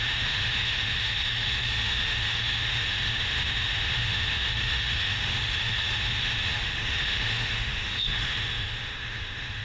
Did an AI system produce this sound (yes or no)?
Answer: yes